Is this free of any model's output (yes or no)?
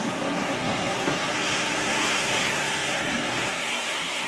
no